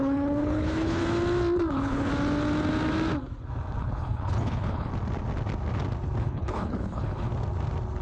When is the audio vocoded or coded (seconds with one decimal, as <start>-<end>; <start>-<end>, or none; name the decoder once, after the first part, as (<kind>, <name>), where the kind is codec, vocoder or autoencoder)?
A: 0.0-1.0 (codec, HILCodec); 1.7-2.1; 3.8-4.9; 6.2-7.3